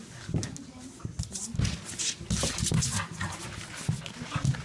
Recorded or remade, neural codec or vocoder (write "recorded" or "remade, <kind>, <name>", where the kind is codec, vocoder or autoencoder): recorded